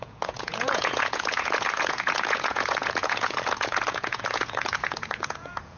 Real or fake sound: fake